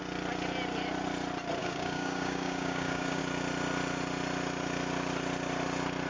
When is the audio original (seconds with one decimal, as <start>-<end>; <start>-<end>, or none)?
0.0-1.6; 3.2-6.1